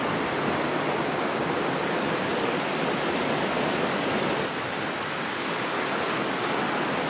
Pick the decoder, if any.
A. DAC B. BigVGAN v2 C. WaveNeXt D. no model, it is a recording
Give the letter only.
D